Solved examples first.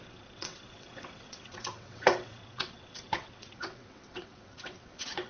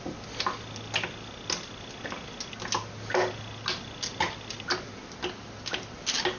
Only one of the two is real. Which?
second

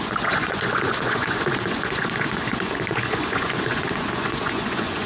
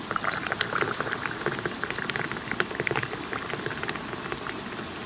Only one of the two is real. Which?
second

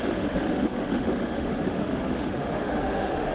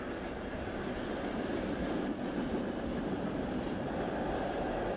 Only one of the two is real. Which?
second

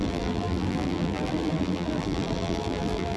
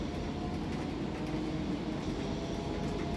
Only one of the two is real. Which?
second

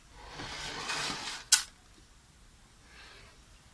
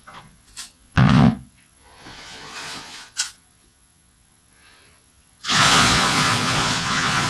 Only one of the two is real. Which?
first